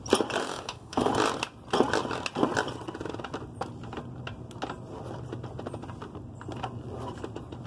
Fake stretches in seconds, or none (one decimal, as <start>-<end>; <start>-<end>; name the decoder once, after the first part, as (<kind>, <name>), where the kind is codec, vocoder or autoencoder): 0.4-1.1 (autoencoder, DAC-VAE)